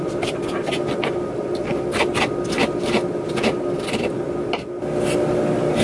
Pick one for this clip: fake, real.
real